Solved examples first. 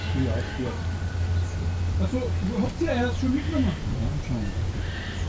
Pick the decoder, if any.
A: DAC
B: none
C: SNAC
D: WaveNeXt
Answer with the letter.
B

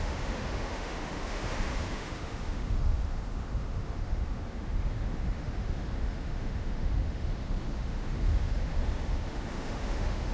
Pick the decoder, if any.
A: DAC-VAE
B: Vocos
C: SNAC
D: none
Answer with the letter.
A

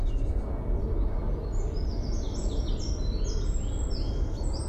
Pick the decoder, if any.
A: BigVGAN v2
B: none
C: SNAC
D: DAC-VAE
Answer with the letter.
B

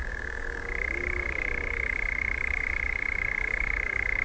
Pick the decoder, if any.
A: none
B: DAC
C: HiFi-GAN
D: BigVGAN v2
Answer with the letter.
B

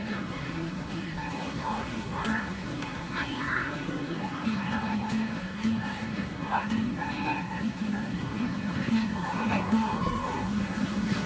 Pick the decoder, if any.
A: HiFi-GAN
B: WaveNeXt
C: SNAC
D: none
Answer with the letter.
C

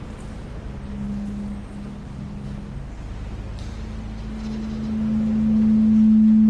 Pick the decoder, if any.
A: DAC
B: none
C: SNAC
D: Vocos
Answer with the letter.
B